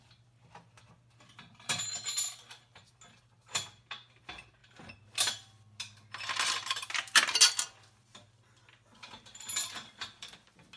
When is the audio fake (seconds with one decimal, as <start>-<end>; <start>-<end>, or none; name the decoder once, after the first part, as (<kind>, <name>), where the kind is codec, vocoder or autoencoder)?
none

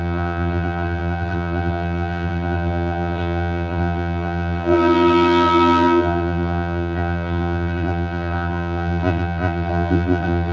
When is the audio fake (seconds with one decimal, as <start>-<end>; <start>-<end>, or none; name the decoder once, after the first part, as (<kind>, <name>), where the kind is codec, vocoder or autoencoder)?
0.0-10.5 (vocoder, BigVGAN v2)

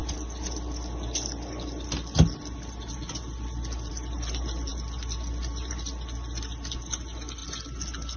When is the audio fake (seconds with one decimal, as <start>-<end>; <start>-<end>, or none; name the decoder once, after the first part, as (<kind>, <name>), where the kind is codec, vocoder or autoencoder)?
none